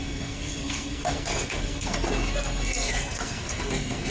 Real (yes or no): no